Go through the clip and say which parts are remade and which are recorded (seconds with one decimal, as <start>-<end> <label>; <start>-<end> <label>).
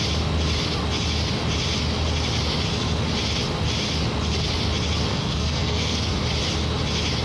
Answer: 0.0-5.1 recorded; 5.1-6.1 remade; 6.1-7.2 recorded